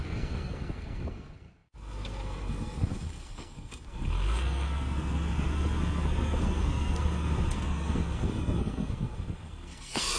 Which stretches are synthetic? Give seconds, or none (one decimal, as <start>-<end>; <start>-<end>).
0.0-10.2